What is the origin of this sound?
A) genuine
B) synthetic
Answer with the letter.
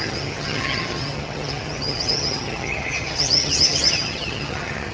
B